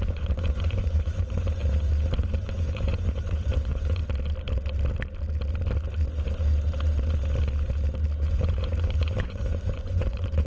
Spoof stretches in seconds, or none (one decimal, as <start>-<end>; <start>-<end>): 0.0-1.6; 2.2-4.0; 8.3-10.5